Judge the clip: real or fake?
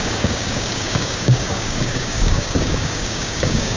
fake